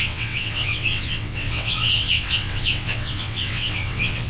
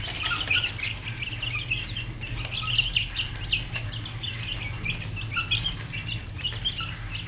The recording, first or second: second